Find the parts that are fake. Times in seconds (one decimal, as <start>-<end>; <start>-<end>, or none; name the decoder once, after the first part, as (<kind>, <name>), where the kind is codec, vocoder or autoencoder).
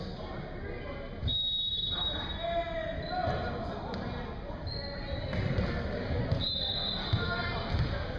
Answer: none